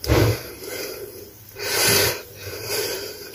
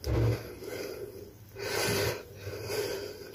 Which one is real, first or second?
second